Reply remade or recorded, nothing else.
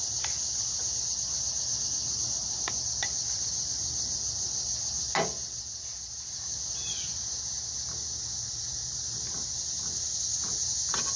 recorded